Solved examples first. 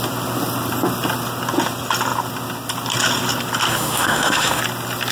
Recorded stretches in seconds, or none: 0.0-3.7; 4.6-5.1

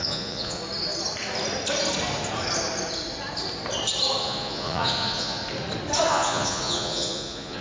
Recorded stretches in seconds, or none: 0.6-4.2; 5.4-6.1

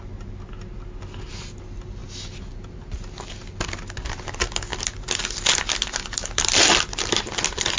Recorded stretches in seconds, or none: 0.0-7.8